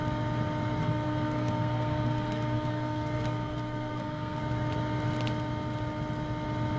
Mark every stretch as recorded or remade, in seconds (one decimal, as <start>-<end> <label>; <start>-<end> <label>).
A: 0.0-0.8 recorded; 0.8-4.4 remade; 4.4-6.8 recorded